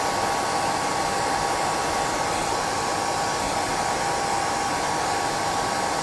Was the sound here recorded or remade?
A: recorded